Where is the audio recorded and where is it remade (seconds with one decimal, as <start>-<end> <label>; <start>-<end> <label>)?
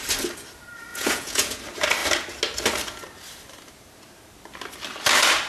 0.0-0.9 recorded; 0.9-1.6 remade; 1.6-5.5 recorded